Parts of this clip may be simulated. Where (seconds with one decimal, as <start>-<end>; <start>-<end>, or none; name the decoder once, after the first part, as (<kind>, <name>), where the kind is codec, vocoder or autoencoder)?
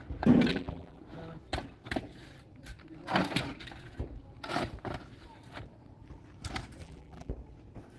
0.5-1.0 (vocoder, BigVGAN v2); 6.8-7.3